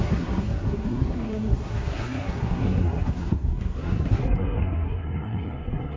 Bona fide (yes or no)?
no